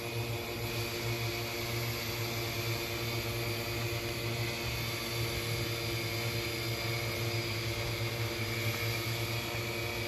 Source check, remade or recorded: recorded